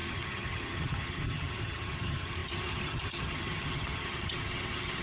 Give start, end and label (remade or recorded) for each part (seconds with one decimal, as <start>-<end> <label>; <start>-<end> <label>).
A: 0.0-5.0 remade